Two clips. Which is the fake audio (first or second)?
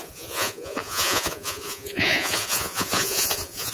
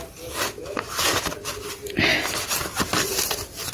first